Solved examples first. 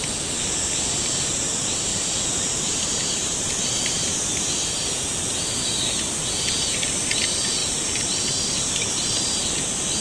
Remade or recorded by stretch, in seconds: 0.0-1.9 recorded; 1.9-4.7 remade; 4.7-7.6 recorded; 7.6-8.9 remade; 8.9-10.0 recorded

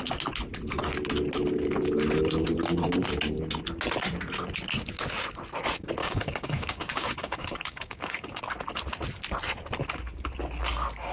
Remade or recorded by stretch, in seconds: 0.0-6.0 recorded; 6.0-8.4 remade; 8.4-11.1 recorded